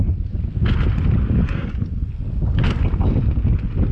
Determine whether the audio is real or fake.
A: real